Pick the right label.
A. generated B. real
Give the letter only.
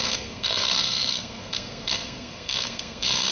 A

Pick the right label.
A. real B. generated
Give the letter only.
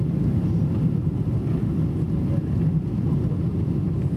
A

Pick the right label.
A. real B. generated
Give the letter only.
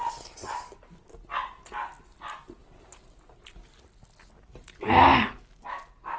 A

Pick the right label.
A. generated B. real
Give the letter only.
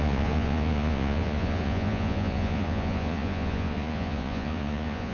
A